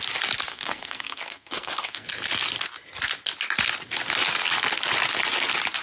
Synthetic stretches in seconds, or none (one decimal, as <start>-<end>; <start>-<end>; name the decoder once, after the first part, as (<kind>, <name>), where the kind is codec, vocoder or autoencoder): 0.5-2.1 (codec, SNAC)